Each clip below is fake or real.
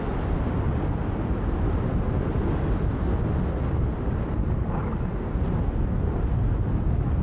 real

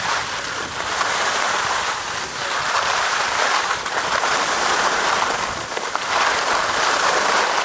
real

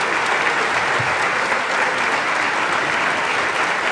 real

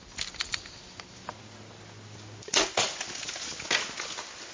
real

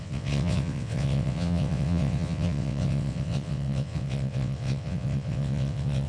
fake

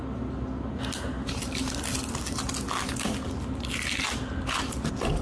real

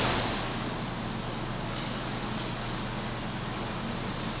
real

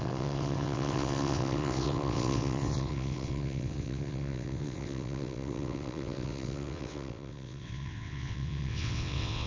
fake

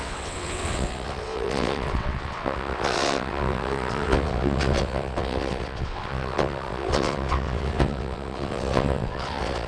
fake